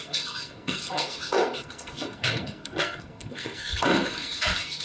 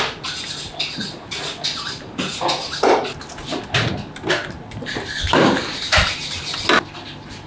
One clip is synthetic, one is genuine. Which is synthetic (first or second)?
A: first